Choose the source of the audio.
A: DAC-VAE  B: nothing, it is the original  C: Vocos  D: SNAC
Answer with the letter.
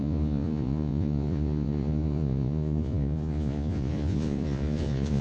C